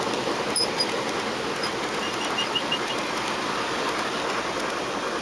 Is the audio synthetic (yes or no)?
no